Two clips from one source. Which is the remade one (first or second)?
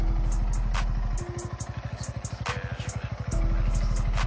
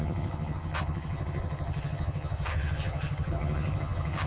second